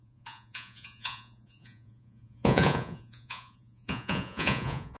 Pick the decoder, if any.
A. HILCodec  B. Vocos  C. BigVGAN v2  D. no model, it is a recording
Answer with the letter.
B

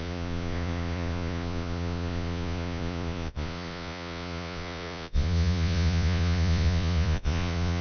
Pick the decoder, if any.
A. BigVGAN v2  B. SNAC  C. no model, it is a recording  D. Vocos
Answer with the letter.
D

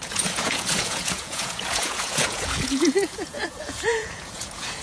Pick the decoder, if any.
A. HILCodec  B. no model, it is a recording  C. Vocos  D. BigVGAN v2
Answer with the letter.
C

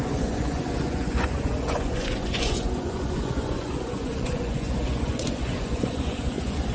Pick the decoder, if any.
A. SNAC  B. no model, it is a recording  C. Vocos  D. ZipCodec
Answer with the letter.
C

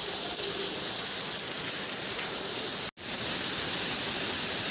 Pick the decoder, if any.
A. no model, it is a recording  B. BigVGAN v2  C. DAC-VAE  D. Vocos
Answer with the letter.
A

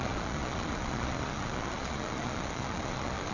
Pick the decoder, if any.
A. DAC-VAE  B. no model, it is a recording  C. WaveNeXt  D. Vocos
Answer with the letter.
D